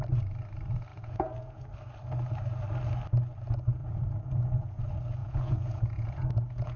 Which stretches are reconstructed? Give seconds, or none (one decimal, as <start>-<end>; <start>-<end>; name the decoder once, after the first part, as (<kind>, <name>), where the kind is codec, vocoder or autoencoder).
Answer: 0.9-1.6 (vocoder, Vocos); 3.8-4.8; 5.2-6.8